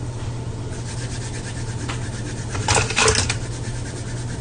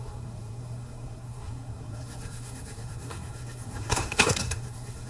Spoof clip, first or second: second